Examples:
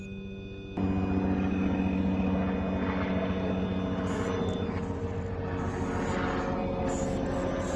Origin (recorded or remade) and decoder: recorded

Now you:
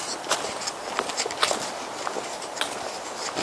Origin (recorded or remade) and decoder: recorded